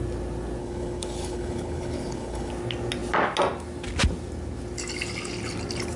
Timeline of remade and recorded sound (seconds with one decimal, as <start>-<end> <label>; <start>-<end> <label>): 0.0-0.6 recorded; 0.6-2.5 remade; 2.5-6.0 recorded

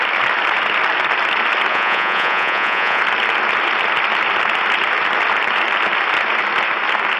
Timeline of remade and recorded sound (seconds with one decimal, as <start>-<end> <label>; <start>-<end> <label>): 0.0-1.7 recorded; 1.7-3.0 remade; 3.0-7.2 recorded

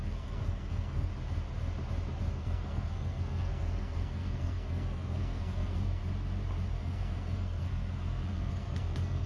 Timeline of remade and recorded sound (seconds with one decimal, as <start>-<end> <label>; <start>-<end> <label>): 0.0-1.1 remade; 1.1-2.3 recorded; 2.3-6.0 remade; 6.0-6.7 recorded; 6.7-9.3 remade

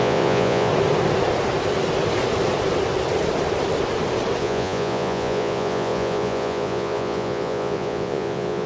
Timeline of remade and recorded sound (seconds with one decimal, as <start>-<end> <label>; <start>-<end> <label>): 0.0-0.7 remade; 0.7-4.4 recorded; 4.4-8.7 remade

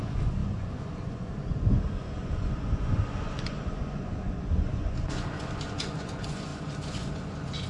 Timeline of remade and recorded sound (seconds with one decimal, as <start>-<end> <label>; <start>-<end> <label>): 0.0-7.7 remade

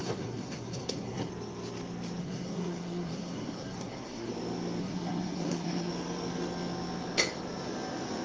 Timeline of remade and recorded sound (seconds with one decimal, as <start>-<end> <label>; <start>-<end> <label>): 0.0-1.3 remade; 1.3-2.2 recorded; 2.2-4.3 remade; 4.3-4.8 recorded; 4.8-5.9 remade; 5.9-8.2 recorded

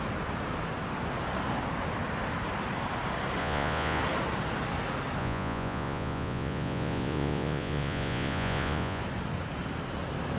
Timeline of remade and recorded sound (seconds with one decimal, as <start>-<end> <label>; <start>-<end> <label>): 0.0-3.4 recorded; 3.4-4.0 remade; 4.0-5.2 recorded; 5.2-9.0 remade; 9.0-10.4 recorded

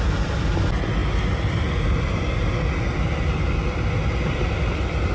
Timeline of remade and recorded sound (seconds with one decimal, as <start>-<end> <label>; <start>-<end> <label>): 0.0-5.1 recorded